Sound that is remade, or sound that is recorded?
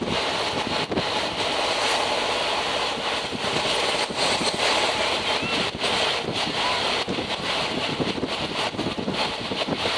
recorded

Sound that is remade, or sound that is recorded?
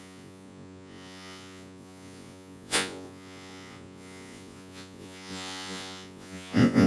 remade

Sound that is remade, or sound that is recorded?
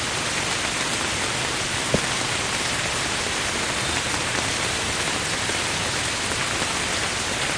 recorded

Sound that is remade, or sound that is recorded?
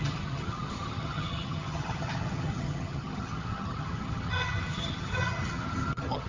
remade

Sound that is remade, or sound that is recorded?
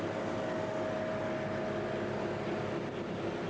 recorded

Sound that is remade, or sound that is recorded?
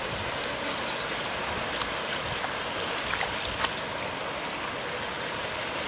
recorded